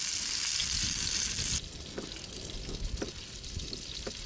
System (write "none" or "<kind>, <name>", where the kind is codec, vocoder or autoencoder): none